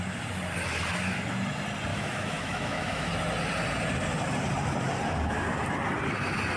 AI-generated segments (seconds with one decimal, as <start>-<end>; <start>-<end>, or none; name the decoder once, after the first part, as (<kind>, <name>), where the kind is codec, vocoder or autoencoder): 1.9-3.1 (autoencoder, DAC-VAE)